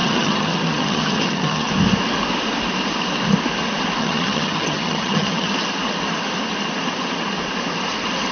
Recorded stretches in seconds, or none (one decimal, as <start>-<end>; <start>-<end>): 1.7-4.0; 5.5-8.3